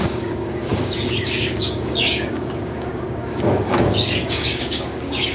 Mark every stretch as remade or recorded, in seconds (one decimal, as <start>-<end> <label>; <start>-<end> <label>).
0.0-5.3 remade